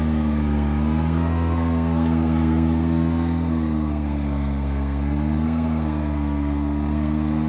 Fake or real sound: fake